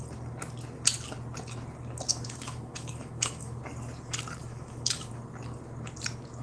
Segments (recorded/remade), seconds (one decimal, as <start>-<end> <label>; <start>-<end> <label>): 0.0-2.1 recorded; 2.1-3.6 remade; 3.6-4.4 recorded; 4.4-5.1 remade; 5.1-6.4 recorded